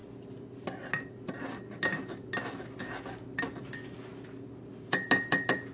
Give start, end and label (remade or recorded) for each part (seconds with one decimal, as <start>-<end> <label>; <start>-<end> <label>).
0.0-5.7 recorded